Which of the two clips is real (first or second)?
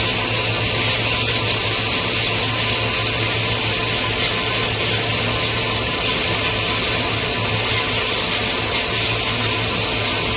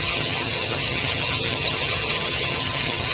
first